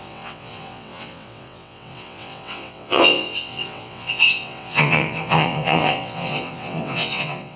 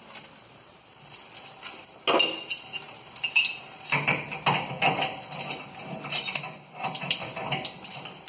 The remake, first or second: first